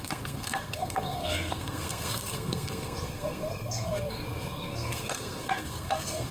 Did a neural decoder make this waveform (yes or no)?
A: yes